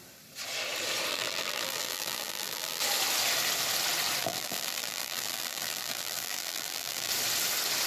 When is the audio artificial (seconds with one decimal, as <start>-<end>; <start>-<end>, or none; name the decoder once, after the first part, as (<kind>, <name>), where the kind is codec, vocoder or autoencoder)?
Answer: 1.1-2.8 (vocoder, BigVGAN v2); 4.2-7.1